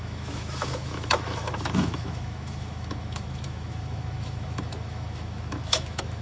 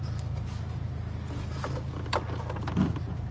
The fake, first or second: first